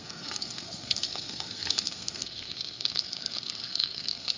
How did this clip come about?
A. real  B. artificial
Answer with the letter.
B